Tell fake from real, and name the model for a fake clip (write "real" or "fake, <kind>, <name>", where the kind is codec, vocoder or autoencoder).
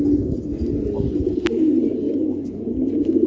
real